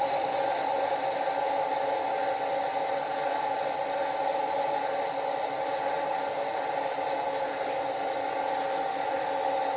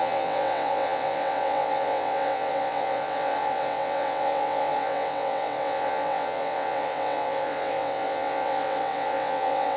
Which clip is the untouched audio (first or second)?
first